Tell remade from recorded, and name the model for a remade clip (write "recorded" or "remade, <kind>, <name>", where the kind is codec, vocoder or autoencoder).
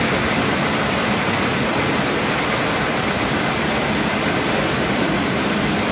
remade, vocoder, BigVGAN v2